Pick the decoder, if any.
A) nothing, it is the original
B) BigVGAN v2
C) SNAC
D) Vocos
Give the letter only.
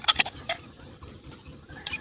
B